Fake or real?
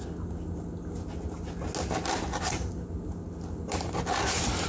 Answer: real